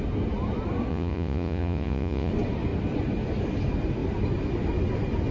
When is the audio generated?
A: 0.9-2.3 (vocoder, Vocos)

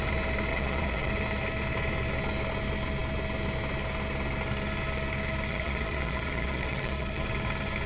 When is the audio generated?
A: 0.5-1.1 (vocoder, Vocos); 5.5-7.2

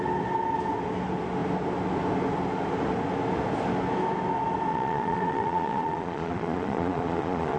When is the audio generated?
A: 4.7-7.6 (vocoder, Vocos)

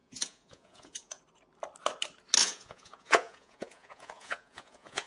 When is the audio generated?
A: 0.0-1.2 (vocoder, Vocos); 2.4-5.1

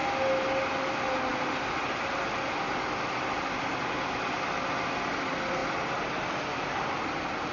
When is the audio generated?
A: none

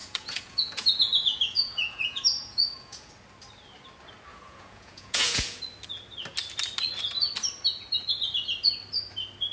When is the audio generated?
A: 0.0-3.1 (vocoder, Vocos); 4.3-5.6